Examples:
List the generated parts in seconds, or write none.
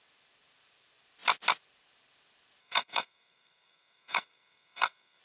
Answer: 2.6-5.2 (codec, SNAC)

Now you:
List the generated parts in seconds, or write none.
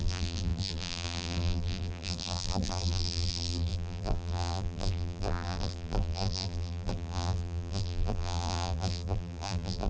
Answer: 0.0-9.9 (vocoder, BigVGAN v2)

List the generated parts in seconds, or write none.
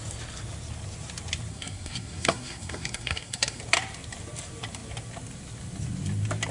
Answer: 1.5-3.6 (codec, SNAC)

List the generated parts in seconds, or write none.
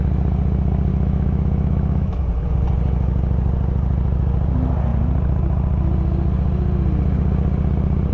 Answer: 0.9-2.2 (autoencoder, DAC-VAE)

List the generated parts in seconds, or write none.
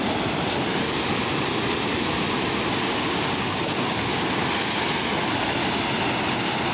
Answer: 2.7-4.3 (codec, DAC)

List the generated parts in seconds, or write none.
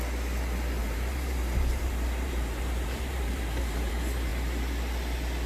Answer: 0.8-3.9 (vocoder, BigVGAN v2)